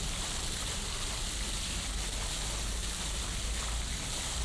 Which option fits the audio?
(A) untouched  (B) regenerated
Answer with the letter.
A